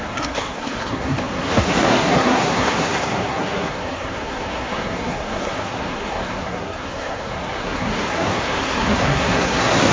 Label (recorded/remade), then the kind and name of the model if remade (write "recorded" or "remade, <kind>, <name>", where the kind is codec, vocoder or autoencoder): remade, codec, SNAC